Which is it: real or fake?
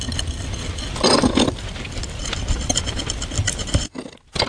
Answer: real